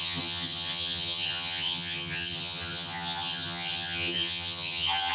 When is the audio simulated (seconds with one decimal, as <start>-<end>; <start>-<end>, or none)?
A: 0.0-5.1